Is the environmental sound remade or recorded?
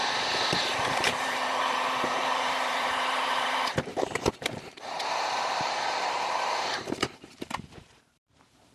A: remade